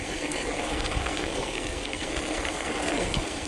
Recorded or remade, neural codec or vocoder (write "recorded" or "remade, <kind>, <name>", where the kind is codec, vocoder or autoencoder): remade, codec, SNAC